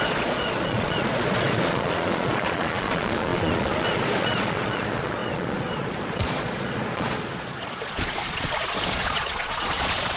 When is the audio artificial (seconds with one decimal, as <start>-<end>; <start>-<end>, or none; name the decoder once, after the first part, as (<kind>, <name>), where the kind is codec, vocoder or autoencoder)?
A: 0.0-10.2 (vocoder, Vocos)